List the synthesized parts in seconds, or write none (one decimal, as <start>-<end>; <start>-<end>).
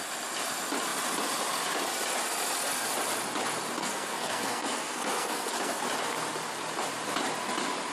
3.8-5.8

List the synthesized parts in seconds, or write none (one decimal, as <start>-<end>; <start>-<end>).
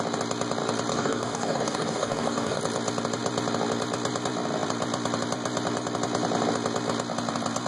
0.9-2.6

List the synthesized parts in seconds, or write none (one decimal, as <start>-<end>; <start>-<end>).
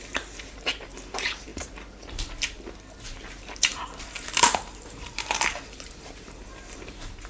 0.0-1.5; 3.3-7.3